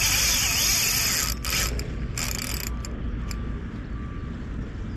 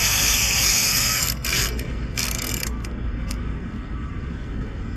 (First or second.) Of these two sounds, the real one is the first